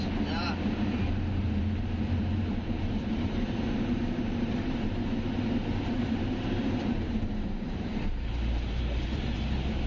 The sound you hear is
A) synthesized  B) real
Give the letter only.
A